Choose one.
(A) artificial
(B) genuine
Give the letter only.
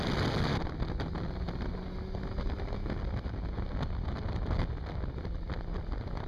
B